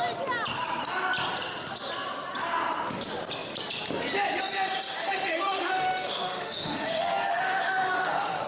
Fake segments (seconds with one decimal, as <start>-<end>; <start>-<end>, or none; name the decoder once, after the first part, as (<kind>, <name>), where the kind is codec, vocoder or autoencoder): 5.0-8.5 (autoencoder, DAC-VAE)